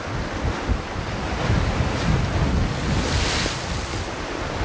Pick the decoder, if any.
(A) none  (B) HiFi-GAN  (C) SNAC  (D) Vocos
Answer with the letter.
A